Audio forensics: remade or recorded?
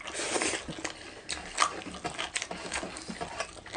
recorded